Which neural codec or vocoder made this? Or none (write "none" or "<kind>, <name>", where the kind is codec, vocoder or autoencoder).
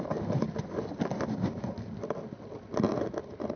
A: none